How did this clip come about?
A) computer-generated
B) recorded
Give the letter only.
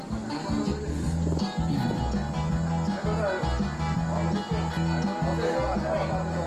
B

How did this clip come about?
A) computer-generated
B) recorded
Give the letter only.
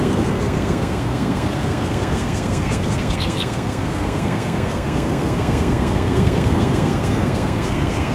A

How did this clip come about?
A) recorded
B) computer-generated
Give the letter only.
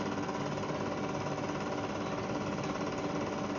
A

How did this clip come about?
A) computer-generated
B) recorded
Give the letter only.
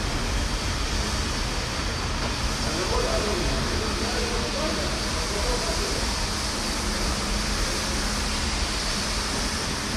B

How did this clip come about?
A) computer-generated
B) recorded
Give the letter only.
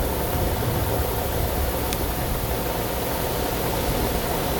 B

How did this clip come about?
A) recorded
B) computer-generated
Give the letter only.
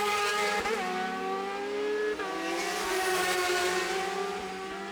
A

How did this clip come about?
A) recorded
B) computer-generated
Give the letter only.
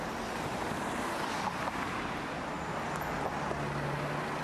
A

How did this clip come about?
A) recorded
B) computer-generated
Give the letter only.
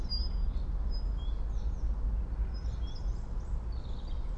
A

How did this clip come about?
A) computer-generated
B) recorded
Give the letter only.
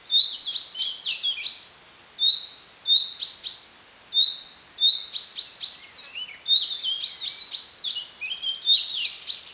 B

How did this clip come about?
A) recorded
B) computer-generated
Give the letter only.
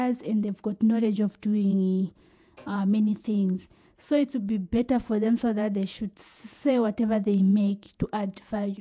B